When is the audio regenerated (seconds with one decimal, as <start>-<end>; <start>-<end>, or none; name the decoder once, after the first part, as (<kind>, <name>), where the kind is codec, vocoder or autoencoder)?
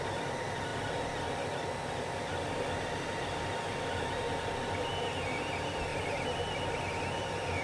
5.9-7.1 (vocoder, BigVGAN v2)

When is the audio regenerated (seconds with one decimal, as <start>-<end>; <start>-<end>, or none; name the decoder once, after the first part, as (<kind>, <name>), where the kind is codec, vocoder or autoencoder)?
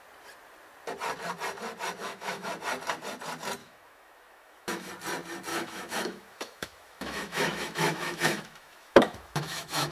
2.0-2.5 (autoencoder, DAC-VAE); 3.6-4.9; 5.5-9.9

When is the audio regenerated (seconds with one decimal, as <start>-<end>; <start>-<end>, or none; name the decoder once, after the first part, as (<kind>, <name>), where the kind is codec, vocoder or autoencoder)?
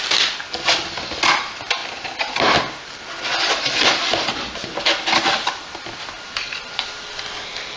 none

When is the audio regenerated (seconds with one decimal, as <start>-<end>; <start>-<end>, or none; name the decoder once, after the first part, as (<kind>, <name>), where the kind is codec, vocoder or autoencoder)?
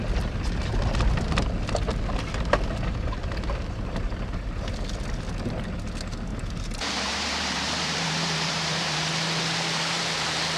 6.3-9.0 (vocoder, BigVGAN v2)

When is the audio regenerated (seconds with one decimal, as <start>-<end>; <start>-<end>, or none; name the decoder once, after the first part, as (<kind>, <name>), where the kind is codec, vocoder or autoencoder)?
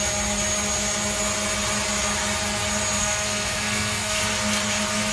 3.0-4.2 (codec, SNAC)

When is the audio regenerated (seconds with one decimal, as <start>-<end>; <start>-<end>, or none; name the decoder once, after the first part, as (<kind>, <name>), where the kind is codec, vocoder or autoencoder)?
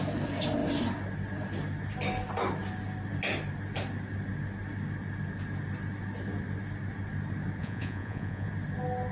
7.6-8.5 (vocoder, Vocos)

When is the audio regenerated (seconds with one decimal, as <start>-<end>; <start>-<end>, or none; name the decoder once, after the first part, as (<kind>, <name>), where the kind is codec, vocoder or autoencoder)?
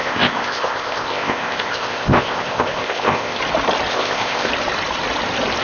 0.0-3.4 (codec, ZipCodec); 3.9-4.5